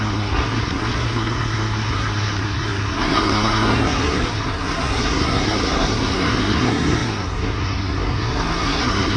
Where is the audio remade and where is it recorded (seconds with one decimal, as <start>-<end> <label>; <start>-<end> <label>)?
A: 0.0-9.2 remade